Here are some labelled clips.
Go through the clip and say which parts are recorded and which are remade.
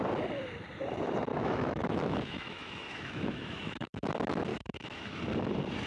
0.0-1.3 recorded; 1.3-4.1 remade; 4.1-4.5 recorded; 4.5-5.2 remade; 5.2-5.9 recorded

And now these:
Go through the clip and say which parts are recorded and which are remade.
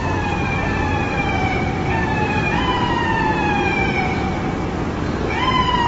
0.0-1.0 recorded; 1.0-4.5 remade; 4.5-5.9 recorded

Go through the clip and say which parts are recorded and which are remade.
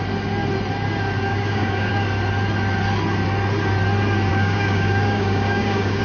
0.0-1.3 recorded; 1.3-1.9 remade; 1.9-4.3 recorded; 4.3-6.0 remade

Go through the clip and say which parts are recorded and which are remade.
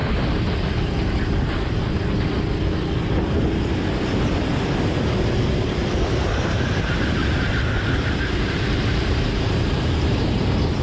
0.0-4.9 recorded; 4.9-7.2 remade; 7.2-7.8 recorded; 7.8-10.8 remade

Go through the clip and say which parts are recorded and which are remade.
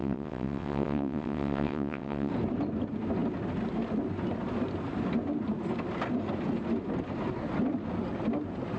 0.0-2.3 remade; 2.3-8.8 recorded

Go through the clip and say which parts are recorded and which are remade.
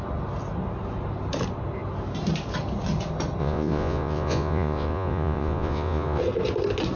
0.0-3.4 recorded; 3.4-6.2 remade; 6.2-7.0 recorded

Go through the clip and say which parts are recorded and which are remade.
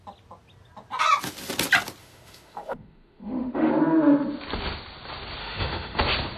0.0-2.0 recorded; 2.0-3.7 remade; 3.7-5.4 recorded; 5.4-6.0 remade; 6.0-6.4 recorded